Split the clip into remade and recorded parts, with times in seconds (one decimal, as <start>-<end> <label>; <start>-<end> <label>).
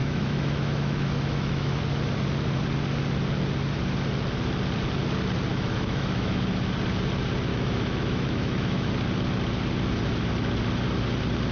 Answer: 0.0-1.8 remade; 1.8-5.5 recorded; 5.5-6.3 remade; 6.3-7.5 recorded; 7.5-8.9 remade; 8.9-11.5 recorded